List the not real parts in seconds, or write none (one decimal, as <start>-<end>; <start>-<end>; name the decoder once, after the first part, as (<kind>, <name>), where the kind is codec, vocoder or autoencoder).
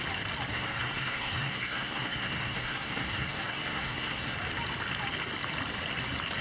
0.5-4.3 (codec, SNAC)